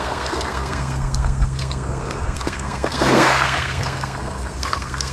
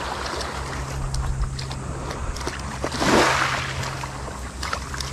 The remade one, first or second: first